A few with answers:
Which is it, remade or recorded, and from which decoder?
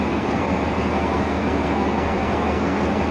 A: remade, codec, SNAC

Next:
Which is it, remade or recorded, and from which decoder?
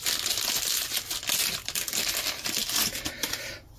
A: recorded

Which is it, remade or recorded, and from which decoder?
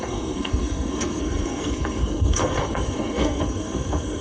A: remade, codec, SNAC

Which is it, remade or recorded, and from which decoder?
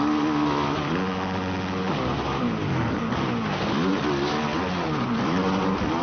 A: recorded